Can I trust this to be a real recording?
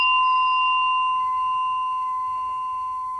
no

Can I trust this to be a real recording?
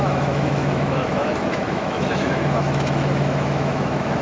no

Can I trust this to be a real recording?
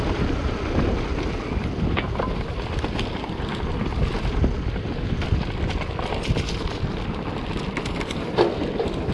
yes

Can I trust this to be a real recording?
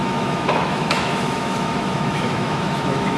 no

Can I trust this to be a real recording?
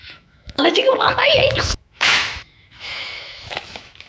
no